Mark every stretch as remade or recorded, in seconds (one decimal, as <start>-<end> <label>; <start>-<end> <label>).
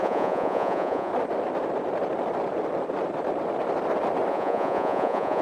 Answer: 0.0-1.1 remade; 1.1-4.3 recorded; 4.3-5.4 remade